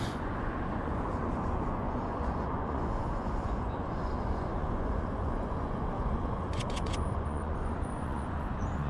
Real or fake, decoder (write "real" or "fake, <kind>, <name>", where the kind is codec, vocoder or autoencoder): fake, vocoder, Vocos